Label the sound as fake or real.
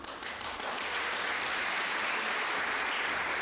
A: real